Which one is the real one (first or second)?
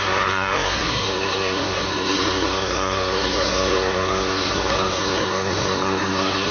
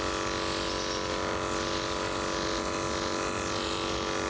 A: second